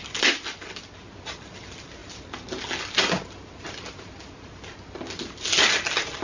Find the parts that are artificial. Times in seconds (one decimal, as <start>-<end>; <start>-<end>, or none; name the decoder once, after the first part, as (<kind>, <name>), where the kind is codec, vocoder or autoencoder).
none

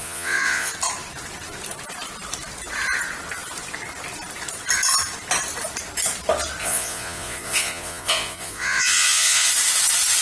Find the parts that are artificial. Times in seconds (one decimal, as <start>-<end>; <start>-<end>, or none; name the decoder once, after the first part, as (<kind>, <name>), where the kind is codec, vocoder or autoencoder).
0.0-0.7 (vocoder, Vocos); 6.6-9.5

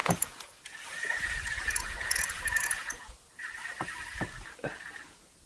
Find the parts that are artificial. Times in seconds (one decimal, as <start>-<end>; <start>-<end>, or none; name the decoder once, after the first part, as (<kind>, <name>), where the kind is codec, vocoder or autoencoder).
0.0-3.3 (vocoder, Vocos)

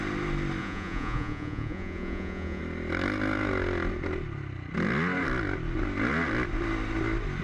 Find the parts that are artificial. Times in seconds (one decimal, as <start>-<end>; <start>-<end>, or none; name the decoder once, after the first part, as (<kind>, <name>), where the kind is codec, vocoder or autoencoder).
0.6-2.6 (vocoder, Vocos)